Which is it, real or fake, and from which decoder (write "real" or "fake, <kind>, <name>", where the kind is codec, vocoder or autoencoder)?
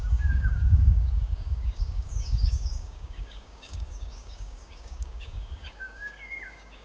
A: fake, codec, DAC